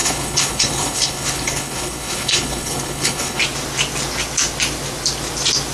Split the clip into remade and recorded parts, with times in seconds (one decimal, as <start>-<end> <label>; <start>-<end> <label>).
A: 0.0-3.4 remade; 3.4-5.7 recorded